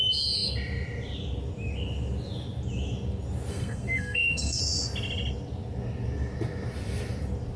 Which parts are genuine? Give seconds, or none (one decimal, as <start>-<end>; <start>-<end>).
0.0-3.5; 4.6-7.6